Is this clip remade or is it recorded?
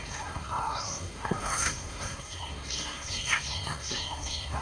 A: remade